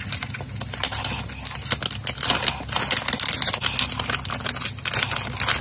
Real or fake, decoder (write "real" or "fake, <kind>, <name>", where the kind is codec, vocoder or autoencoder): real